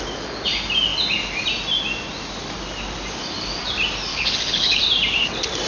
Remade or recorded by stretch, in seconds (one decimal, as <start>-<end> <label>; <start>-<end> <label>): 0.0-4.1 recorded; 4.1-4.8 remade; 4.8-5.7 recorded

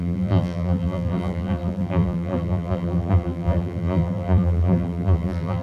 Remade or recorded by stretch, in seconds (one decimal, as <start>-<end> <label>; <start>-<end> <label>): 0.0-5.6 remade

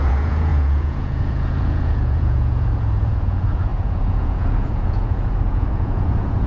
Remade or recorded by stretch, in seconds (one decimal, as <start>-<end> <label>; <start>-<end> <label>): 0.0-6.5 remade

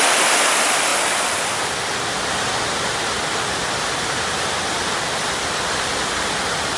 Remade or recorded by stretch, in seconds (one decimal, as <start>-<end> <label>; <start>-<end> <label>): 0.0-6.8 recorded

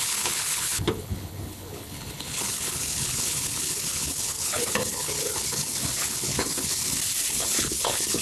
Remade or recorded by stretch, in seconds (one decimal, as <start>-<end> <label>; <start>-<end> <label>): 0.0-6.8 remade; 6.8-7.3 recorded; 7.3-8.2 remade